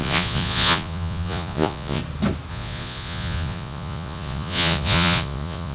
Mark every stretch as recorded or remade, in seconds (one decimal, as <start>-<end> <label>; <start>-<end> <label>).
0.0-2.0 remade; 2.0-2.5 recorded; 2.5-5.7 remade